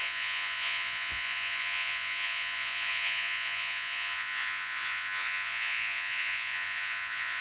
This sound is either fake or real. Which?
fake